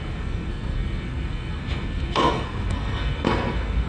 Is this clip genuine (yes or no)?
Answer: no